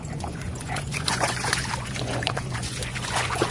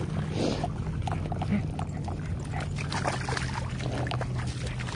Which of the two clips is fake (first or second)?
first